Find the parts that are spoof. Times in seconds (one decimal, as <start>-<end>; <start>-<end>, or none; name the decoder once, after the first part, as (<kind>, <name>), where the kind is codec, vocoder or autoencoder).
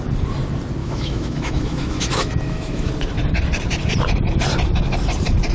0.8-2.9 (autoencoder, DAC-VAE)